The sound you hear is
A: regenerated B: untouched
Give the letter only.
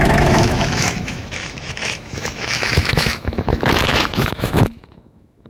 A